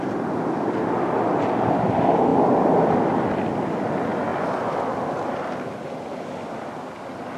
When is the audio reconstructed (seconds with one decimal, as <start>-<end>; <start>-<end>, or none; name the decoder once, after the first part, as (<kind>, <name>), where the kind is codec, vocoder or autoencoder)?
none